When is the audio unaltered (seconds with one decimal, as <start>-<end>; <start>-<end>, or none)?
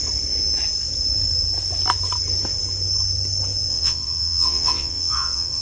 0.0-3.7